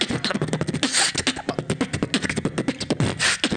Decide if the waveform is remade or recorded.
recorded